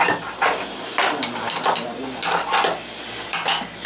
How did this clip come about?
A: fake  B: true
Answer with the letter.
B